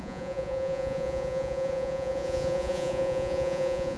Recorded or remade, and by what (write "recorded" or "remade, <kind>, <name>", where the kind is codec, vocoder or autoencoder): remade, vocoder, Vocos